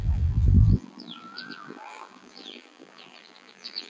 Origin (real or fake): fake